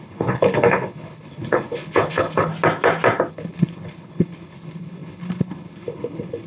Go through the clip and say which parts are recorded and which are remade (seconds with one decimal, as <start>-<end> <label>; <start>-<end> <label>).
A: 0.0-2.5 remade; 2.5-3.3 recorded; 3.3-6.5 remade